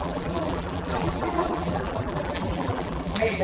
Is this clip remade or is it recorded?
remade